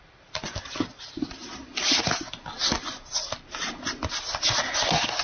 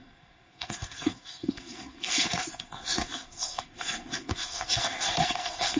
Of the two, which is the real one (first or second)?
first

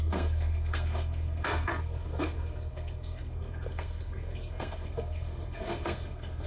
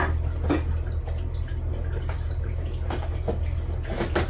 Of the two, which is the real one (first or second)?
second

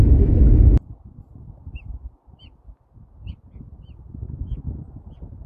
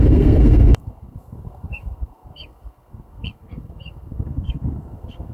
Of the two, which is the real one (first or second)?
first